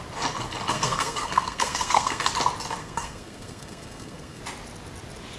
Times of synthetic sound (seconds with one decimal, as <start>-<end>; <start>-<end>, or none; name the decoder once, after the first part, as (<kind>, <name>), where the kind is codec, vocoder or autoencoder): 0.7-2.3 (codec, SNAC); 2.8-4.4